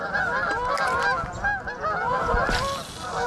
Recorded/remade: recorded